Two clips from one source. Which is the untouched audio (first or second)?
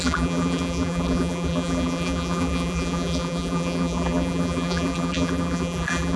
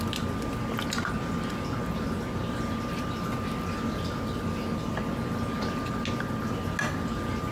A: second